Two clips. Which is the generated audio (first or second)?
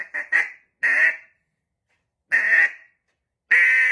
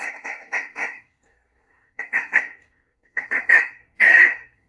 second